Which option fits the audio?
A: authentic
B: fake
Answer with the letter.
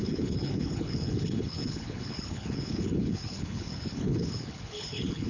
B